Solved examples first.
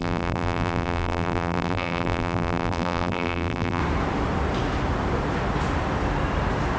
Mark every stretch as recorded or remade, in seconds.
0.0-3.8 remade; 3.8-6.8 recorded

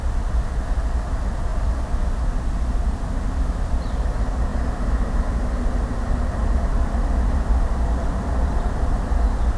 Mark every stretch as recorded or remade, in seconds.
0.0-9.6 recorded